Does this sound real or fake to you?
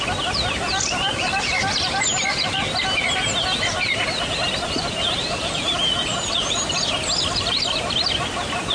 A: real